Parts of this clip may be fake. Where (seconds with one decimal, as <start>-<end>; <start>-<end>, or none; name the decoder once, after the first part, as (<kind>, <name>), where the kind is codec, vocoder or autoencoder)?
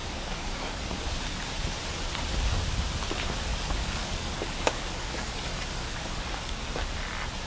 0.0-0.8 (codec, DAC); 3.5-6.6